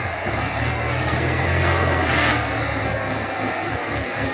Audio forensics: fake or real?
fake